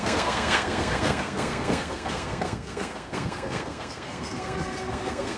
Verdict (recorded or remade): remade